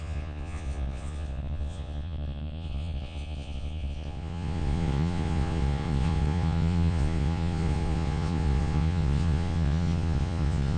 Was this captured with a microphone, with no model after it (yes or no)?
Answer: no